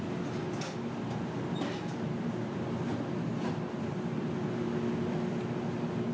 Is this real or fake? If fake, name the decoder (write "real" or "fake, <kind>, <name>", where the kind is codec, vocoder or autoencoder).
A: real